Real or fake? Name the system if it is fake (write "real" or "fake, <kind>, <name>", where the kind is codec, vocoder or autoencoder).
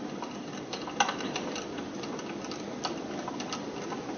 real